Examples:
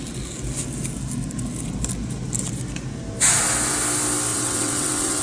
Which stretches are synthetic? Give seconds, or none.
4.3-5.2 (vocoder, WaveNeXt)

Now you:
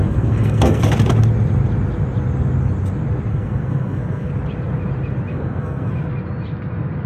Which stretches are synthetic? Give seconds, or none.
0.0-0.8 (codec, SNAC); 3.3-4.3; 5.3-5.9

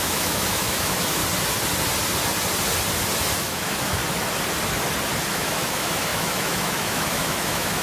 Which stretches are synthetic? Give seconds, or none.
0.0-1.2 (autoencoder, DAC-VAE); 3.4-4.0; 5.3-7.8

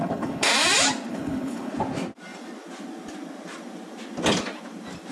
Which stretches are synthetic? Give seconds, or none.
0.0-0.5 (codec, HILCodec); 1.1-1.7